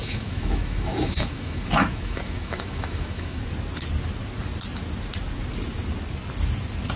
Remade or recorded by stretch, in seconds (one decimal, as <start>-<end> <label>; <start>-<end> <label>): 0.0-3.4 remade; 3.4-7.0 recorded